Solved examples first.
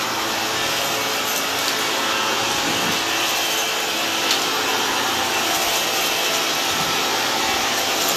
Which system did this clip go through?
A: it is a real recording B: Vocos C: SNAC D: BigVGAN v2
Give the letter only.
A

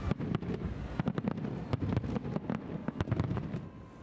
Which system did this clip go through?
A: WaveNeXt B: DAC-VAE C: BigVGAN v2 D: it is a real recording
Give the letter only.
D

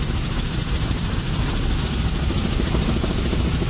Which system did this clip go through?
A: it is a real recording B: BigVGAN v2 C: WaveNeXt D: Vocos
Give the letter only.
A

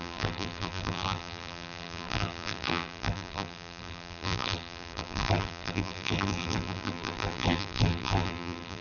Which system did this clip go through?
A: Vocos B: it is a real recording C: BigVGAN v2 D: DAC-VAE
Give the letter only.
C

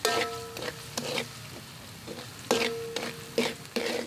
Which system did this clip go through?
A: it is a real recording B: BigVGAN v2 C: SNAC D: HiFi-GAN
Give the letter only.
A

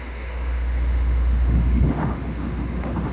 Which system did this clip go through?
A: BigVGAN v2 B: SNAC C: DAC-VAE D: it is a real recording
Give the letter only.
C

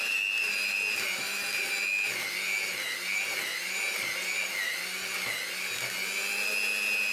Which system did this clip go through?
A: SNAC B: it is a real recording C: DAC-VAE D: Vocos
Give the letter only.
B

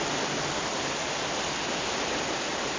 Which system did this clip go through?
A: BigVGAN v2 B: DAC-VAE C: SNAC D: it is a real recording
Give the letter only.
D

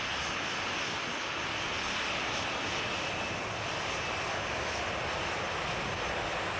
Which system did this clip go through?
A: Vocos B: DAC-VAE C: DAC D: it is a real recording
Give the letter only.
D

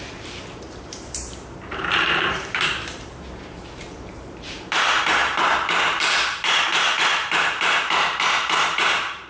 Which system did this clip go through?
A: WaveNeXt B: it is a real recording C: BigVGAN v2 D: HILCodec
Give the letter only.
C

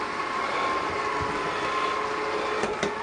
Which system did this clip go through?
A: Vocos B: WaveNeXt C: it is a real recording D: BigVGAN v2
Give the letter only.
C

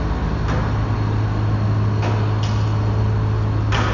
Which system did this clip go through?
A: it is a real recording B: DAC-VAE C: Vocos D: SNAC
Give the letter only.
A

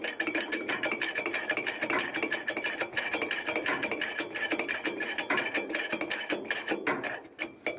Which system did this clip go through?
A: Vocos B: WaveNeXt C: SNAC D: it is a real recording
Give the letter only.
D